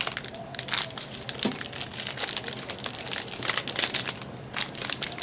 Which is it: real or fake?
real